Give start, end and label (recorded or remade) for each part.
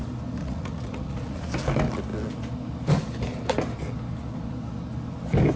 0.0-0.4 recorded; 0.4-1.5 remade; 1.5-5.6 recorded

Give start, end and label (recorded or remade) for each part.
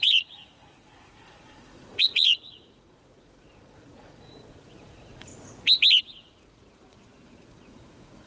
0.0-5.3 remade; 5.3-6.0 recorded; 6.0-8.3 remade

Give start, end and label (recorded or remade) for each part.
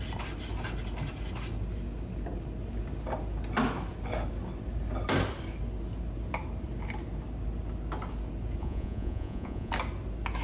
0.0-8.6 recorded; 8.6-9.7 remade; 9.7-10.4 recorded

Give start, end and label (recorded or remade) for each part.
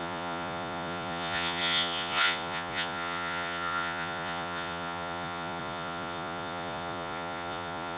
0.0-8.0 remade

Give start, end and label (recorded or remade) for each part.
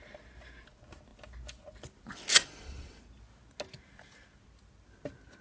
0.0-2.3 recorded; 2.3-3.0 remade; 3.0-5.4 recorded